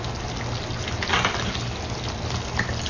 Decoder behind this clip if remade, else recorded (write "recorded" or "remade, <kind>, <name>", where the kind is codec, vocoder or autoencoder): recorded